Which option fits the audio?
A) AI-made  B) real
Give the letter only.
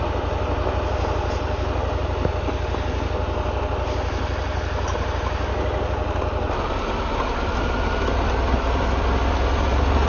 B